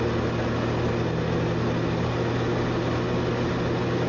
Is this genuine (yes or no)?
yes